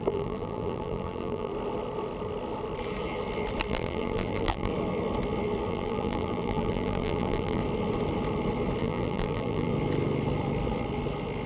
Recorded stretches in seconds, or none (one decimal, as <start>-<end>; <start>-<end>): 1.5-3.7; 4.7-5.7; 7.6-8.8; 9.7-11.5

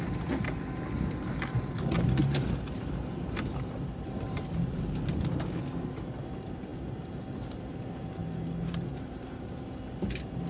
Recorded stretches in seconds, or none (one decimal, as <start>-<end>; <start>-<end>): 0.0-2.2; 5.2-8.2; 9.5-10.5

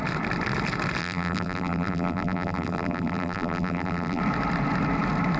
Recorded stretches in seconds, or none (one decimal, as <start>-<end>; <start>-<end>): 0.0-1.0; 4.2-5.4

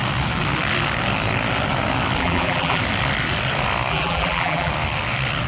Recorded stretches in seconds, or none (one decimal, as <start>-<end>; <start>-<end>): 0.0-2.2; 2.8-3.9; 4.7-5.5

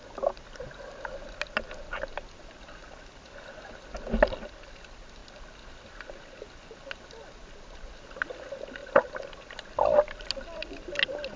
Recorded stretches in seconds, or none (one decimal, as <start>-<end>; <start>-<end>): 0.0-2.8; 3.7-11.4

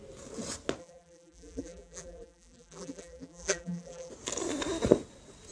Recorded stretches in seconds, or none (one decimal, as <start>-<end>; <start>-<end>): 0.0-0.8; 4.1-5.5

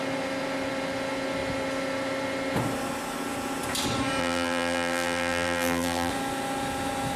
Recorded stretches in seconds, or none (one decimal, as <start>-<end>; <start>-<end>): 0.0-4.2; 6.1-7.2